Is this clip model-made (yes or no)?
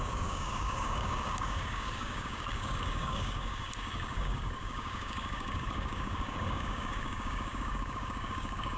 yes